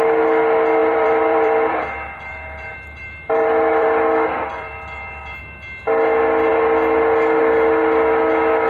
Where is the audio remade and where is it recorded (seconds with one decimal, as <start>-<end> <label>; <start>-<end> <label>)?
0.0-0.8 recorded; 0.8-5.4 remade; 5.4-8.7 recorded